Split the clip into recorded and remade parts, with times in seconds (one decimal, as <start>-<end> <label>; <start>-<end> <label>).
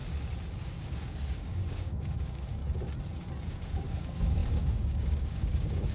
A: 0.0-0.5 recorded; 0.5-2.6 remade; 2.6-3.4 recorded; 3.4-5.9 remade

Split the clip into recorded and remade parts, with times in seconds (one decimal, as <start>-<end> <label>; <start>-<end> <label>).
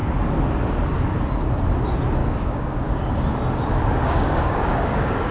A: 0.0-2.2 recorded; 2.2-3.1 remade; 3.1-4.0 recorded; 4.0-5.3 remade